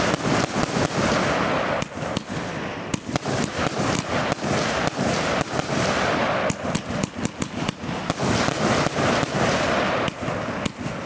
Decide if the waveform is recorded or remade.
recorded